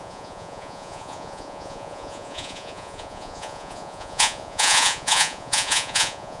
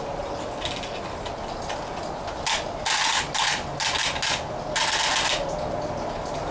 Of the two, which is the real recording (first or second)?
second